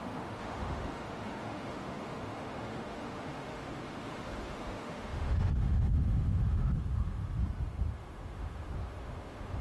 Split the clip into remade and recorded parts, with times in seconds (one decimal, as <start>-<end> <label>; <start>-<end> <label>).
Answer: 0.0-7.2 remade; 7.2-7.9 recorded; 7.9-9.6 remade